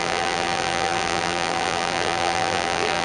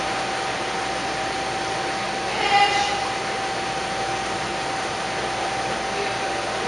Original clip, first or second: second